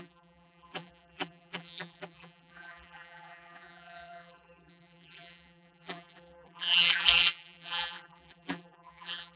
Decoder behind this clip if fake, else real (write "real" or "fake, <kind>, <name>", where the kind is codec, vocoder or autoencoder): fake, vocoder, BigVGAN v2